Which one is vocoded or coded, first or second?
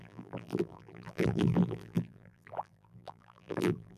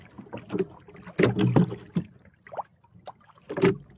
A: first